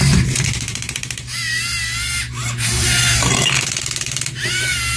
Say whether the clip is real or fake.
fake